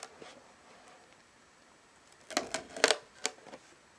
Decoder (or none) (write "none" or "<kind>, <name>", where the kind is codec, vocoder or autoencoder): none